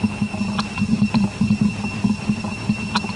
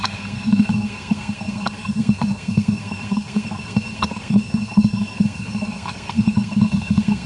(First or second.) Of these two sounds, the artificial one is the second